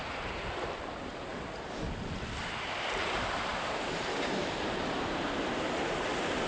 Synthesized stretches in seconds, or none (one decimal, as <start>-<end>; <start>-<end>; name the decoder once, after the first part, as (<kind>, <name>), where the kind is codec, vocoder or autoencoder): 0.0-1.3 (vocoder, BigVGAN v2); 2.4-6.5